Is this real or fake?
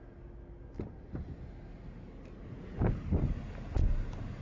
real